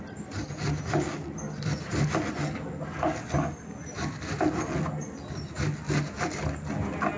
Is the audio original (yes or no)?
yes